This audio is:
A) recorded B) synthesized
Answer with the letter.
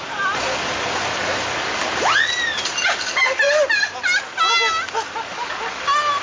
A